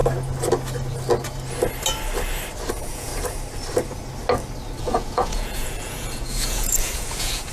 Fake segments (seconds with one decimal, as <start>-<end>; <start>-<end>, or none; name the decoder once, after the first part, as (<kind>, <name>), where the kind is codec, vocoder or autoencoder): 2.7-3.1 (vocoder, Vocos); 4.8-7.5